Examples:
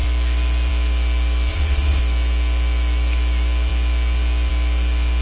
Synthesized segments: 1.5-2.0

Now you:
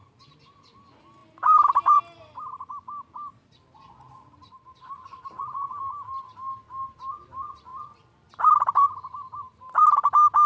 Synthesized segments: 1.2-2.0; 7.7-9.4

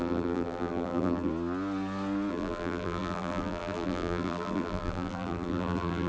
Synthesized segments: 0.0-1.3; 2.3-6.1

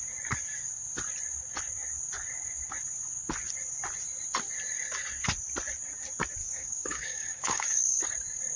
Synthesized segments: 6.4-8.0

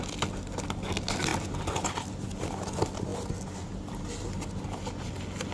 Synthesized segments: none